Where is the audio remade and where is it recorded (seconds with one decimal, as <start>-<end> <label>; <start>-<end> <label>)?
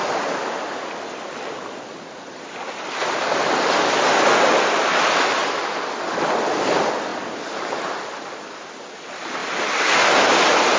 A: 0.0-10.8 recorded